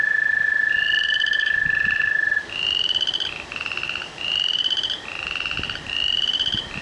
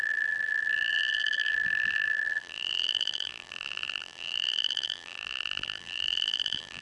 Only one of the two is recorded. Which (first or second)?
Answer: first